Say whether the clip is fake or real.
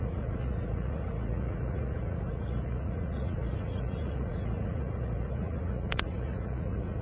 fake